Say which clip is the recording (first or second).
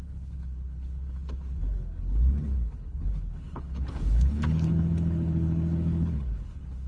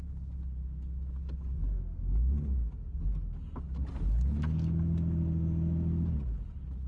second